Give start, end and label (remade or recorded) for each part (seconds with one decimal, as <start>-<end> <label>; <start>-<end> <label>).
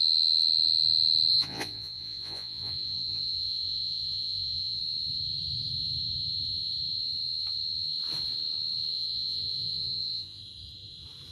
0.0-1.3 recorded; 1.3-4.8 remade; 4.8-8.9 recorded; 8.9-10.4 remade; 10.4-11.3 recorded